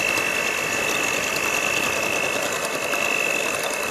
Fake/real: real